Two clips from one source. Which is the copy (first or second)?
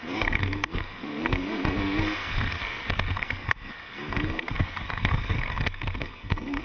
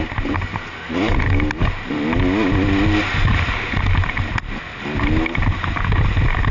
first